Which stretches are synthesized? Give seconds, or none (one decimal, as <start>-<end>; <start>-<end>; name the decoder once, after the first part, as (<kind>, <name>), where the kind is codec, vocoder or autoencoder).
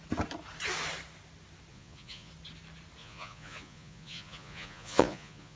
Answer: 1.7-2.3 (vocoder, Vocos); 3.0-5.6